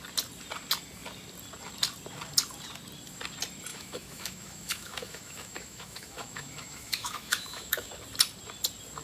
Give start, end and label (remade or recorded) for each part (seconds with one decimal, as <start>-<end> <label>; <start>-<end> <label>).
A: 0.0-3.7 recorded; 3.7-7.9 remade; 7.9-9.0 recorded